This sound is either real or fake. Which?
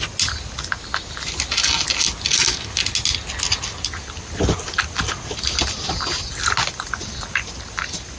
real